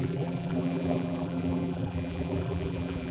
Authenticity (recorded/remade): remade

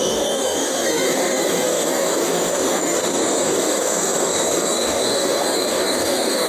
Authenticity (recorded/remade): remade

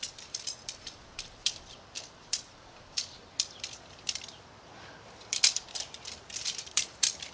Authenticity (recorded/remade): remade